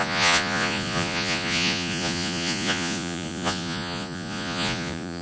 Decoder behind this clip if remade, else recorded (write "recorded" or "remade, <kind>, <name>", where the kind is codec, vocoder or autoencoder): remade, vocoder, Vocos